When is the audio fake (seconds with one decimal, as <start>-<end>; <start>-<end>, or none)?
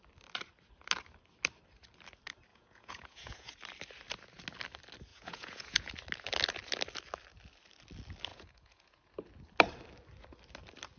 2.5-3.5; 5.1-5.9; 8.3-9.1